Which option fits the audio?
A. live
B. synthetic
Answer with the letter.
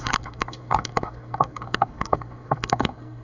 B